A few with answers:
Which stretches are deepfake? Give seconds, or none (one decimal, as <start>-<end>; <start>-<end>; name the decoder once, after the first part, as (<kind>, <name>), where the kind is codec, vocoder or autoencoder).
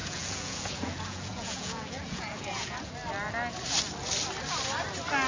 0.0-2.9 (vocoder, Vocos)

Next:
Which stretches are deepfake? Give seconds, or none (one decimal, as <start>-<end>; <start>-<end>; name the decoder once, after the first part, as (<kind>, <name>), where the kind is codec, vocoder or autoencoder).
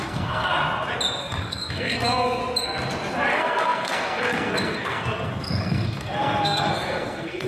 0.0-0.5 (codec, SNAC); 1.2-2.4; 3.3-7.5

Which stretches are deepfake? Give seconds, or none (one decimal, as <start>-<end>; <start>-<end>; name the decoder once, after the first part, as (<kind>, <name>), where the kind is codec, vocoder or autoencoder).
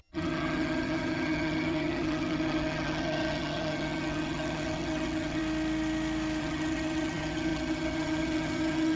0.0-5.4 (vocoder, HiFi-GAN); 6.4-9.0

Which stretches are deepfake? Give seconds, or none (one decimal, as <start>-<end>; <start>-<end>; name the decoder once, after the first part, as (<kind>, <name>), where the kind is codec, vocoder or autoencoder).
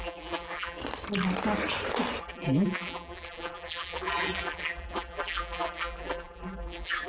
0.0-0.8 (vocoder, BigVGAN v2); 2.2-7.1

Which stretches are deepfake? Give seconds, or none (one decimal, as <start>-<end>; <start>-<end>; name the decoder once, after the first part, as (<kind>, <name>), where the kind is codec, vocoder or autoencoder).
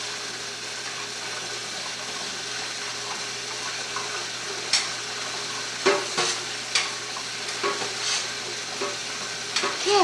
none